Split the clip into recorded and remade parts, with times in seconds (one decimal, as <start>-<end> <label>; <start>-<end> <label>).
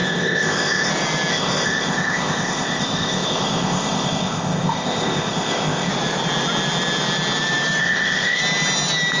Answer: 0.0-0.9 remade; 0.9-1.3 recorded; 1.3-5.9 remade; 5.9-7.8 recorded; 7.8-8.4 remade; 8.4-9.2 recorded